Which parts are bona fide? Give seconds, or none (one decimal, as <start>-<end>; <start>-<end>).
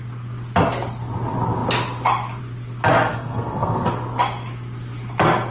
0.0-3.1; 3.9-5.5